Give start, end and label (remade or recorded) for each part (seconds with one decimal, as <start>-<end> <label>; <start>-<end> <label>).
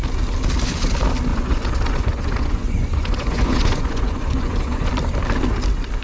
0.0-1.3 recorded; 1.3-4.9 remade; 4.9-6.0 recorded